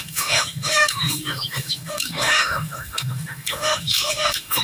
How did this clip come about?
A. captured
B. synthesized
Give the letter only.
B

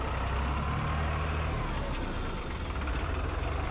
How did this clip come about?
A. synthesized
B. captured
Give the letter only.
B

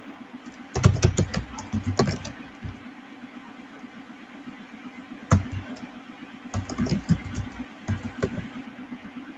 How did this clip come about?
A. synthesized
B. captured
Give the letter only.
B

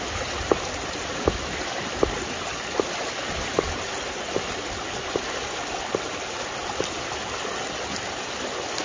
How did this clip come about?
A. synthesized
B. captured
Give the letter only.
B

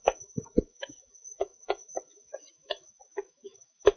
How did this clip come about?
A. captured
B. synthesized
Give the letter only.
B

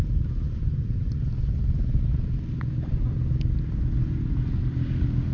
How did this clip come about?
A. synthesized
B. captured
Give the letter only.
B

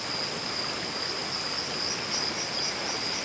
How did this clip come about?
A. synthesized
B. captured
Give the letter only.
B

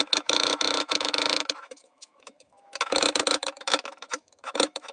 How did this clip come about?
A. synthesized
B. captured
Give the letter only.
A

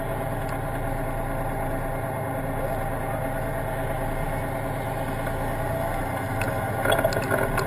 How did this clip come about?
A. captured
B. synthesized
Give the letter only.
A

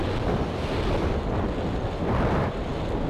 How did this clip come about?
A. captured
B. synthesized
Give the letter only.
A